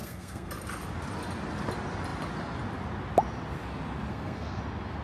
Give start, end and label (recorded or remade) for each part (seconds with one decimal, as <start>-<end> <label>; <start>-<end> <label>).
0.0-0.5 remade; 0.5-4.1 recorded; 4.1-4.6 remade; 4.6-5.0 recorded